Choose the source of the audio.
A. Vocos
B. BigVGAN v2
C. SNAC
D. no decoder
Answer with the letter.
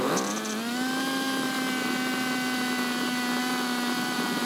D